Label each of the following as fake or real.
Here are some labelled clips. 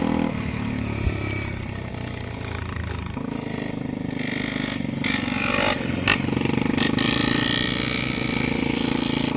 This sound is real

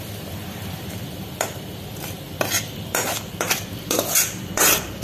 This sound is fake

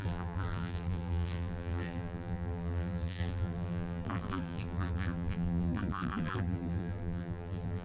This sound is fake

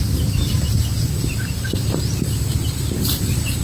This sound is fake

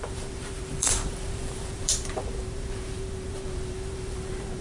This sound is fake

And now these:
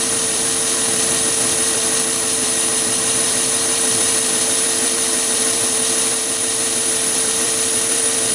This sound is fake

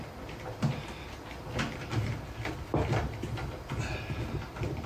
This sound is real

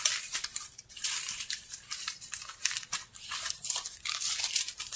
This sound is fake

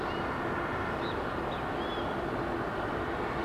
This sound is real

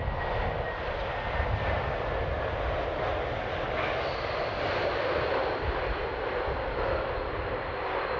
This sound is real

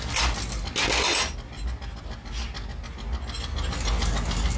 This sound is real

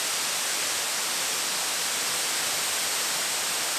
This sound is real